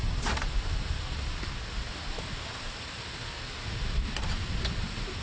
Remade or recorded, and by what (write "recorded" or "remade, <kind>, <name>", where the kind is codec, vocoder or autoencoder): recorded